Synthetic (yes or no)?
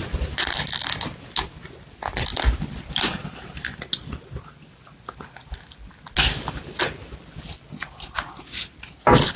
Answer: no